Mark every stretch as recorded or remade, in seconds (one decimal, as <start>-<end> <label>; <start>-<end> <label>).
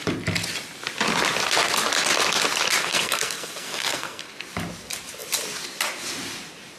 0.0-2.8 recorded; 2.8-4.4 remade; 4.4-6.8 recorded